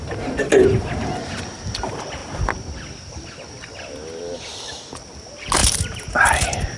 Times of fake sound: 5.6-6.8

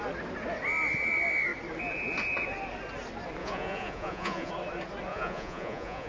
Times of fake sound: 3.4-4.5; 5.1-6.1